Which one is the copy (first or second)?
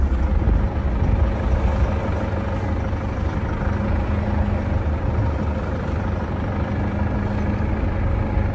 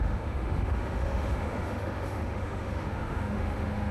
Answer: second